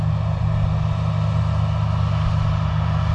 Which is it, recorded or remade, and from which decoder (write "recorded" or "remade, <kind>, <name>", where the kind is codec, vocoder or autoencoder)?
recorded